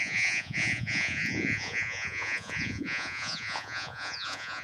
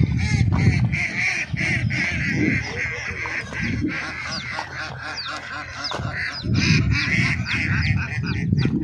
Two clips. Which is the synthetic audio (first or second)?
first